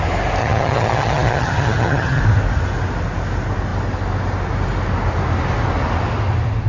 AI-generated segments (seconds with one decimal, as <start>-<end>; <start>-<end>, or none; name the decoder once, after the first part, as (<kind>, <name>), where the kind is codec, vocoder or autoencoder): 0.4-2.2 (vocoder, HiFi-GAN)